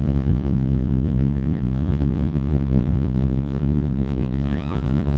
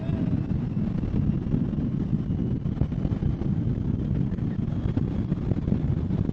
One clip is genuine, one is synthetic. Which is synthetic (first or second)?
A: first